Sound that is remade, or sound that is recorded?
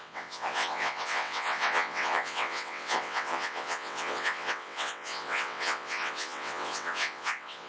remade